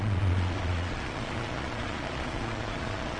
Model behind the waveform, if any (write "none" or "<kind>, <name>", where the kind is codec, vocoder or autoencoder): vocoder, Vocos